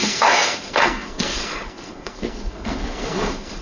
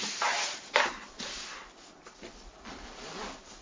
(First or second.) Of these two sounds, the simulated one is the first